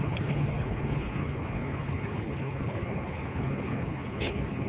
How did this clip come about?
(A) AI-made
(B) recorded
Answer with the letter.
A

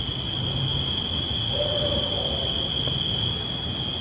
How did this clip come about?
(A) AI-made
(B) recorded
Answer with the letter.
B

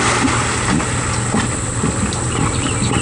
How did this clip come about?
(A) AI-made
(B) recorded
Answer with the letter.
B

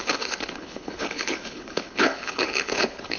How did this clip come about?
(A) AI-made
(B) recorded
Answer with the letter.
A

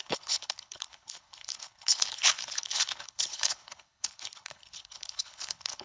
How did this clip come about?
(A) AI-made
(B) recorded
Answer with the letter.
A